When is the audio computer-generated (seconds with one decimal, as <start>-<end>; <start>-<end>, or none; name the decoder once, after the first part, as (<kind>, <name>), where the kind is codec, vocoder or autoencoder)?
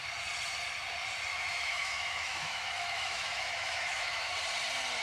1.3-4.3 (autoencoder, DAC-VAE)